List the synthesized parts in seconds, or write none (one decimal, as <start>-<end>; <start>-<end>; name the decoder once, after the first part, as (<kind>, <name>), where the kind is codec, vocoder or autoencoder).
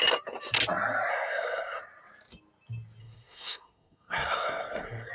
1.1-1.8 (codec, SNAC); 3.0-5.1